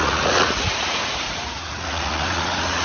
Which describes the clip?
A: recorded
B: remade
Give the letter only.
B